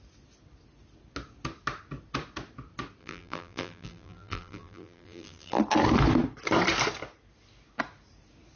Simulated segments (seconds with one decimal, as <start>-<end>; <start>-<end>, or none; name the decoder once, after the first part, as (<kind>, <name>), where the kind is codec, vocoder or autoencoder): 3.0-5.6 (vocoder, BigVGAN v2)